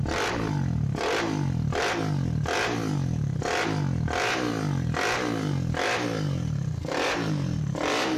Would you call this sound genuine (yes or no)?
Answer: yes